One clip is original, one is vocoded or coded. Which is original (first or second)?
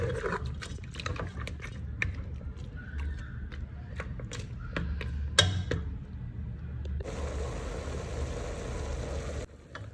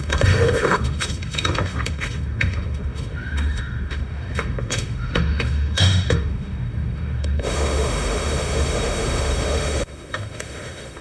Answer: first